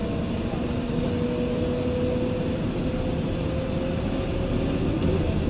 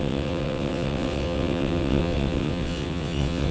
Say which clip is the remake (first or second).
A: second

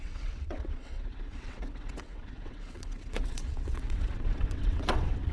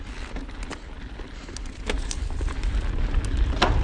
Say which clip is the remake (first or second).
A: first